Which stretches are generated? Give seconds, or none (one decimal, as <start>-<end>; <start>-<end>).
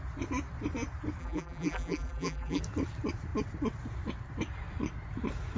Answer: 1.2-2.6